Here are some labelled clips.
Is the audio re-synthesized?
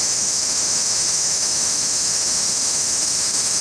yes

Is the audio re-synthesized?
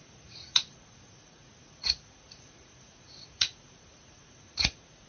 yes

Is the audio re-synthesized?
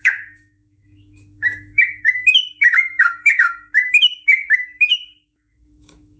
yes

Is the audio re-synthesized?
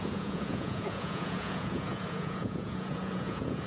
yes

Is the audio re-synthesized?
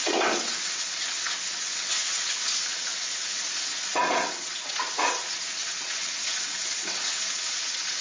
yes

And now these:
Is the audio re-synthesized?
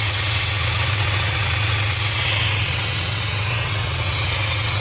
yes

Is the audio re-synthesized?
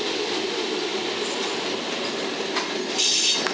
no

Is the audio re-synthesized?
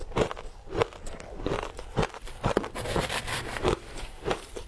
yes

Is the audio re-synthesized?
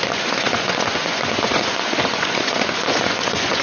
yes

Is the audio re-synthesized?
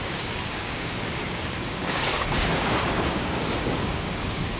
yes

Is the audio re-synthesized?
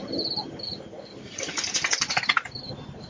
no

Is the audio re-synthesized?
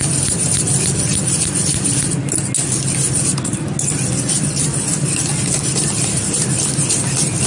no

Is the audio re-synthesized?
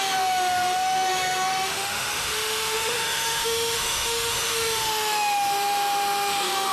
yes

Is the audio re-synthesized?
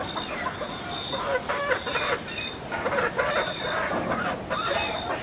no